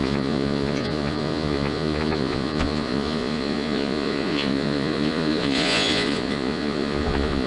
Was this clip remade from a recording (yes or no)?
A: yes